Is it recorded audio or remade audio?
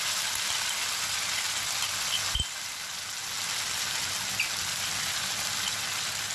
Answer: recorded